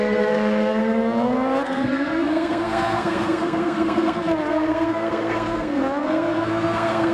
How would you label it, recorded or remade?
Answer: remade